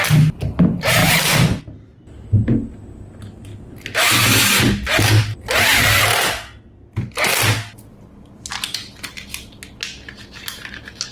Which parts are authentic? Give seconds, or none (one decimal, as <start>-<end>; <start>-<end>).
0.0-1.0; 1.6-11.1